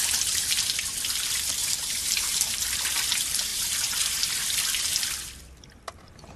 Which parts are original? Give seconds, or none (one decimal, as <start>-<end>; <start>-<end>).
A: 0.0-1.6; 2.5-3.5; 4.2-6.4